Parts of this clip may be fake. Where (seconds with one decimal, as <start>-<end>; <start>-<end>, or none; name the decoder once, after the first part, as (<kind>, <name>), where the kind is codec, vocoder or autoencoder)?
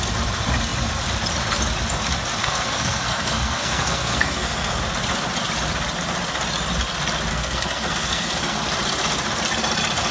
2.4-4.8 (codec, SNAC); 7.3-8.6